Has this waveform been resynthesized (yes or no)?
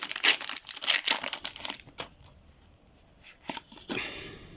no